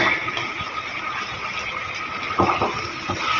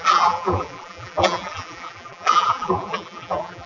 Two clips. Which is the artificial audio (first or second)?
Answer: second